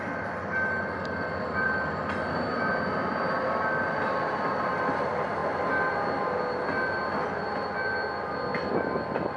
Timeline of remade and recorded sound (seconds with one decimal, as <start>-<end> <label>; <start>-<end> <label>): 0.0-5.4 remade; 5.4-8.7 recorded; 8.7-9.4 remade